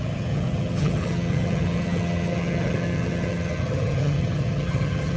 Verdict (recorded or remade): remade